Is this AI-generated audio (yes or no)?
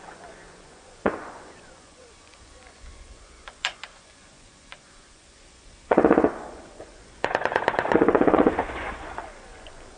yes